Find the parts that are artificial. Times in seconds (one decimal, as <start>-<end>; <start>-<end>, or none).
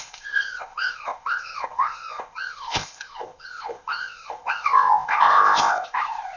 0.0-6.4